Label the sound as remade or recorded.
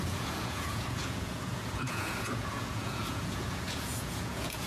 remade